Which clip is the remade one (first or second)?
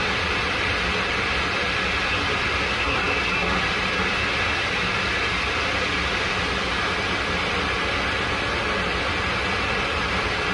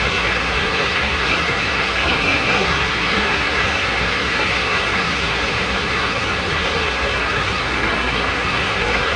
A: second